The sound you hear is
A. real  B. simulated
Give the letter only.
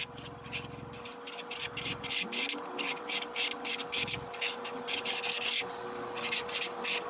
A